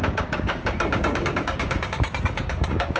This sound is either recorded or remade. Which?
remade